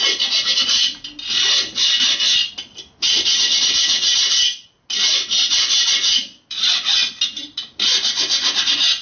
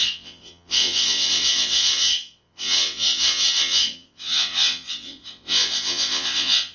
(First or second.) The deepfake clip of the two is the second